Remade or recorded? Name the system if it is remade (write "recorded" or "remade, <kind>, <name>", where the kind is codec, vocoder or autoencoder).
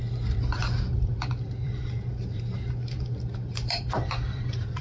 remade, vocoder, BigVGAN v2